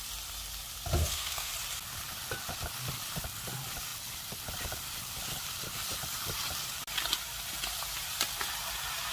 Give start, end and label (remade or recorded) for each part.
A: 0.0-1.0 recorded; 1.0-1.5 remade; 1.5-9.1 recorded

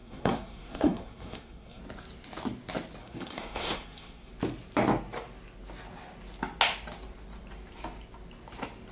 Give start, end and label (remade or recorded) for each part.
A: 0.0-1.8 remade; 1.8-3.0 recorded; 3.0-4.3 remade; 4.3-8.9 recorded

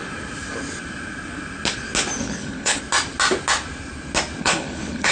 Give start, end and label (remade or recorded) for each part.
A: 0.0-2.2 recorded; 2.2-2.8 remade; 2.8-4.4 recorded; 4.4-5.1 remade

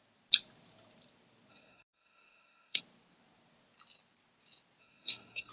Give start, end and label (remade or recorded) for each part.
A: 0.0-1.5 recorded; 1.5-2.8 remade; 2.8-4.8 recorded; 4.8-5.5 remade

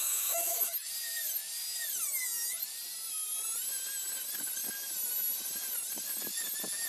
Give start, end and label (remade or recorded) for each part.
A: 0.0-0.9 remade; 0.9-6.9 recorded